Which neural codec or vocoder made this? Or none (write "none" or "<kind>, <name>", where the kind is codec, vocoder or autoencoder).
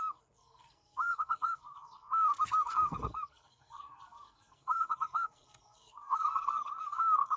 codec, SNAC